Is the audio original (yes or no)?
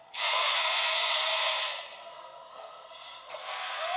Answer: no